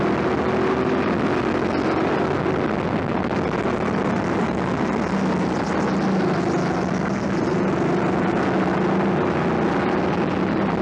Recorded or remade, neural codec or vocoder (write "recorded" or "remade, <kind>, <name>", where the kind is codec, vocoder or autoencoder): recorded